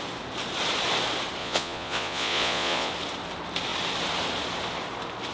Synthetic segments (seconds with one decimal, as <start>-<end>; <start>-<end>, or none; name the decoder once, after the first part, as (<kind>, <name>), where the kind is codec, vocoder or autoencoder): 1.4-2.9 (vocoder, Vocos)